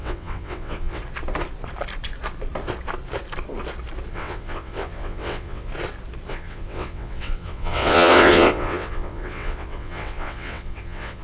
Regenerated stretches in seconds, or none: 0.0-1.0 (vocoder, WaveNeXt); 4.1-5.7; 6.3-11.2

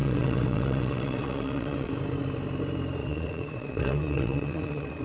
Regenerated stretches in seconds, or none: 0.0-1.9 (vocoder, WaveNeXt); 3.0-5.0

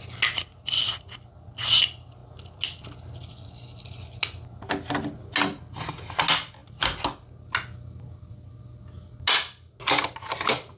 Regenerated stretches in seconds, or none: none

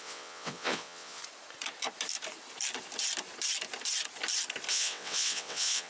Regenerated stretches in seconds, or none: 0.0-1.2 (vocoder, WaveNeXt); 4.7-5.9

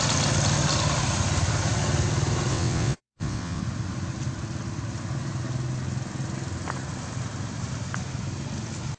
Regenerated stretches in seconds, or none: 2.5-3.6 (vocoder, WaveNeXt)

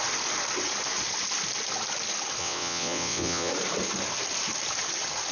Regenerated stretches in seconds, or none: 2.4-3.5 (vocoder, WaveNeXt)

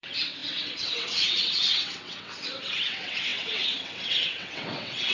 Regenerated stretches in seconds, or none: 0.0-5.1 (vocoder, WaveNeXt)